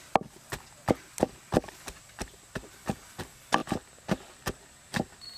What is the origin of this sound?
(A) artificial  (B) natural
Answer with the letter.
B